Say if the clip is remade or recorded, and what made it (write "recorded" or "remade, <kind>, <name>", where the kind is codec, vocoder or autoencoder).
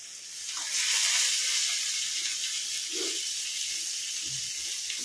recorded